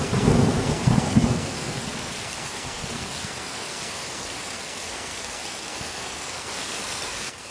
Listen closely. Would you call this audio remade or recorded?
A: remade